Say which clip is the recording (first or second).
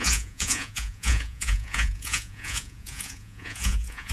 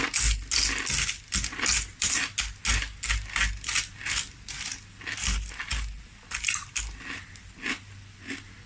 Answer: second